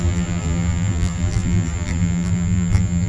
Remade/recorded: remade